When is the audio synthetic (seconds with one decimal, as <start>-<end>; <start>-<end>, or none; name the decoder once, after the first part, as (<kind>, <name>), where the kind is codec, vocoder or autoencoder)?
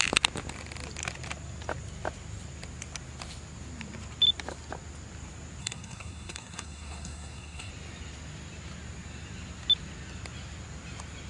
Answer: 5.6-7.7 (codec, SNAC)